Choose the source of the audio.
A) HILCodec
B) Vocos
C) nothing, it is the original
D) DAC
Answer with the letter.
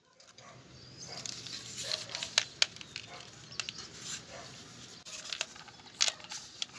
C